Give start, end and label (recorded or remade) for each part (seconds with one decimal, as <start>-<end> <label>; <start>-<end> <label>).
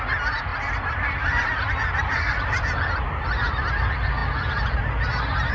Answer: 0.0-0.5 recorded; 0.5-3.7 remade; 3.7-5.5 recorded